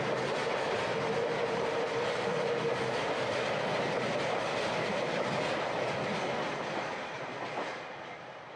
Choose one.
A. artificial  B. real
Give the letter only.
B